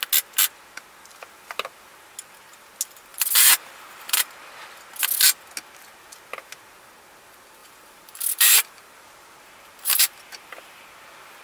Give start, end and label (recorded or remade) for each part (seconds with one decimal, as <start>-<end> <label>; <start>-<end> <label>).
0.0-3.1 recorded; 3.1-4.2 remade; 4.2-7.6 recorded; 7.6-11.4 remade